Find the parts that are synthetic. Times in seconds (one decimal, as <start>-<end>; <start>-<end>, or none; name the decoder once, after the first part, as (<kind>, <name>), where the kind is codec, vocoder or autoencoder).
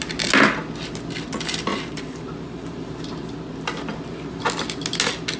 1.7-2.9 (vocoder, BigVGAN v2); 3.9-4.4